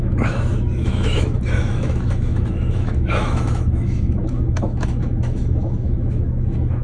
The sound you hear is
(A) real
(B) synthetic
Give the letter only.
B